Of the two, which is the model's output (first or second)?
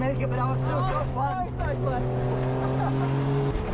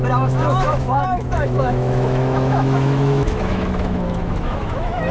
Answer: second